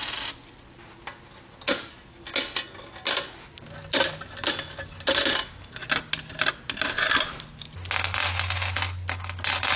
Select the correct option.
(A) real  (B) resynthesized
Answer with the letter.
A